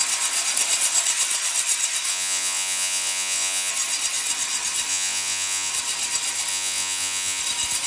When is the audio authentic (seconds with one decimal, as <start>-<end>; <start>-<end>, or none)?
0.0-2.1; 3.7-4.9; 5.7-6.5; 7.4-7.9